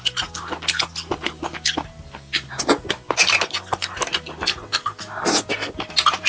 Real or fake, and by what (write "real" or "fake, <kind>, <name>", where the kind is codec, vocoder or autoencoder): real